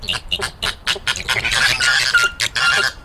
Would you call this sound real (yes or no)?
yes